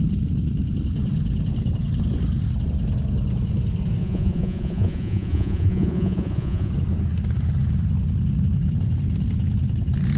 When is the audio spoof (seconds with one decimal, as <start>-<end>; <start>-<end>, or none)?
4.0-6.7